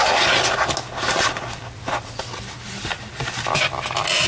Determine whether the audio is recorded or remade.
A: recorded